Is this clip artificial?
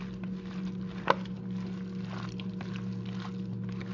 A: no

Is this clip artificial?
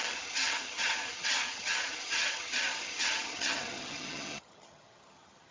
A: yes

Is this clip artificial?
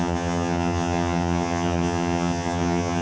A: yes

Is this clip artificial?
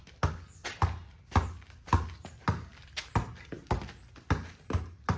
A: no